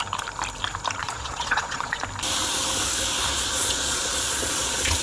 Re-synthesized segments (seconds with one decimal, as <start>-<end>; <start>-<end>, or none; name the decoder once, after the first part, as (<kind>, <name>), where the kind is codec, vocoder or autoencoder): 1.0-2.0 (vocoder, Vocos); 3.3-5.0